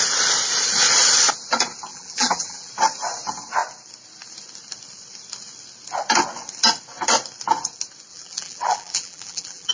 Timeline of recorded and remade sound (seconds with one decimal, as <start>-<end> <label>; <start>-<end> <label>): 0.0-1.9 recorded; 1.9-2.7 remade; 2.7-8.1 recorded; 8.1-9.7 remade